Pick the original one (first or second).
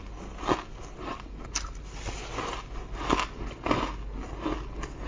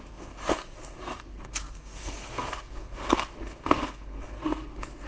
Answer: first